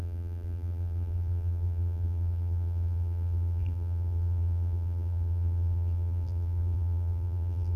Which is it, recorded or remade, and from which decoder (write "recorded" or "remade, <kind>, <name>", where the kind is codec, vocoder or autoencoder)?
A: remade, vocoder, BigVGAN v2